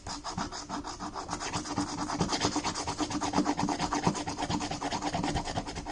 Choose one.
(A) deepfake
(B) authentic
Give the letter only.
B